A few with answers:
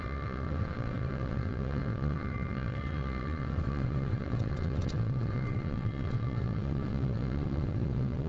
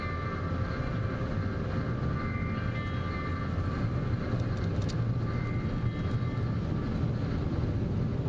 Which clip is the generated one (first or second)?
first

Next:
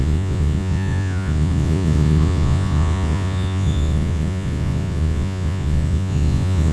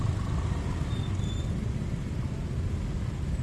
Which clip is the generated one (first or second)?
first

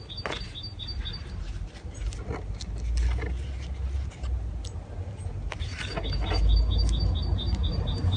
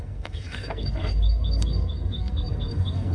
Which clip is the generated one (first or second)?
second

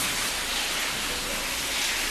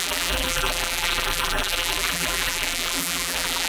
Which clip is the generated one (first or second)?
second